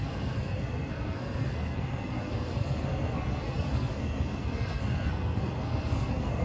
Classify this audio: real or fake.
fake